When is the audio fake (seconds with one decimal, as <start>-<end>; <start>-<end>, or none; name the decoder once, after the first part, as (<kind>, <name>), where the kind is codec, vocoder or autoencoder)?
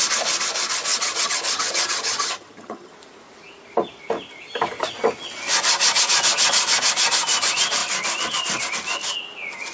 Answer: 0.9-2.9 (vocoder, HiFi-GAN)